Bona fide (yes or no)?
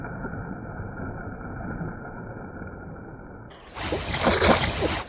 yes